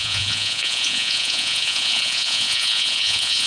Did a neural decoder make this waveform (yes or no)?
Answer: yes